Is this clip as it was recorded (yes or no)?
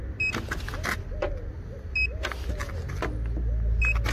yes